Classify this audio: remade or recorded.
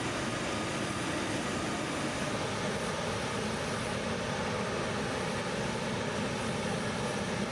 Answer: recorded